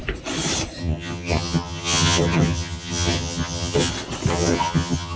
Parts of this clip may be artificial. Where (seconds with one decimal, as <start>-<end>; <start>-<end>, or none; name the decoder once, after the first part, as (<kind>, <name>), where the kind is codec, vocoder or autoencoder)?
0.8-3.9 (vocoder, HiFi-GAN); 4.3-5.2